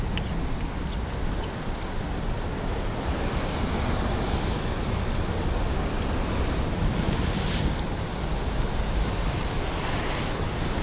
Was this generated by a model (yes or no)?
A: no